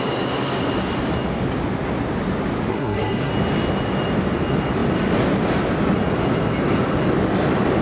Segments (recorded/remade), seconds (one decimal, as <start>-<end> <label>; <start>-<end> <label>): 0.0-2.7 recorded; 2.7-3.3 remade; 3.3-7.8 recorded

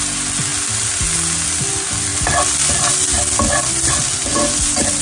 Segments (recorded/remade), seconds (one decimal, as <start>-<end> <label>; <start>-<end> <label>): 0.0-5.0 recorded

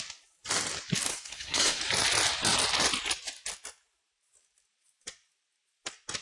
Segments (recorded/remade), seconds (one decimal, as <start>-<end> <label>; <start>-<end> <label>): 0.0-1.1 recorded; 1.1-1.8 remade; 1.8-6.2 recorded

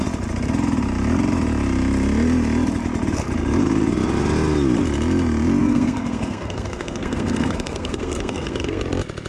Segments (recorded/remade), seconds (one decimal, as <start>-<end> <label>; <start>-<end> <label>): 0.0-5.6 recorded; 5.6-8.8 remade; 8.8-9.3 recorded

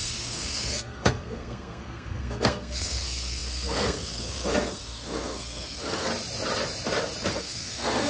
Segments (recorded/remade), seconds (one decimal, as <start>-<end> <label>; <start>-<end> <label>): 0.0-6.1 remade; 6.1-7.3 recorded; 7.3-8.1 remade

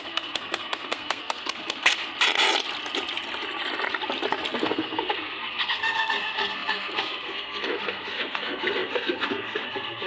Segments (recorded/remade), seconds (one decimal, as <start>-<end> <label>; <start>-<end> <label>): 0.0-2.0 remade; 2.0-4.5 recorded; 4.5-10.1 remade